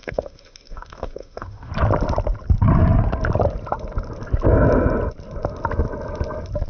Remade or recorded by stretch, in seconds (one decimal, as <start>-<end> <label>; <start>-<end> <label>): 0.0-1.7 remade; 1.7-6.7 recorded